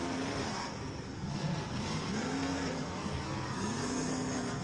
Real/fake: fake